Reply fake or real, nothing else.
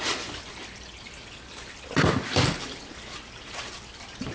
fake